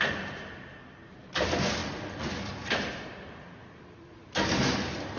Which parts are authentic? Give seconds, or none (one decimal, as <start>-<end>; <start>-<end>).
0.0-5.2